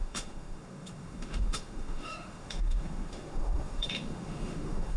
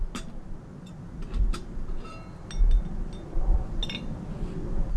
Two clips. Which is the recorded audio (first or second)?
second